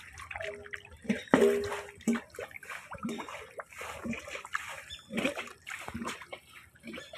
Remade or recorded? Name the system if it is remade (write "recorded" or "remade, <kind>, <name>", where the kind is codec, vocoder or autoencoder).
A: recorded